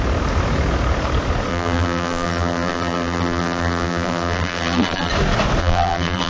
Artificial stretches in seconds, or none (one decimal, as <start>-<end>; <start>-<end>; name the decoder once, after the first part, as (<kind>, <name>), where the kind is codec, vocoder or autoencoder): 1.5-5.1 (vocoder, BigVGAN v2); 5.6-6.3